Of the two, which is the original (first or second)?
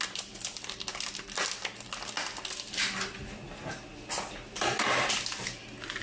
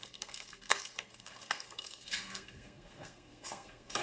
first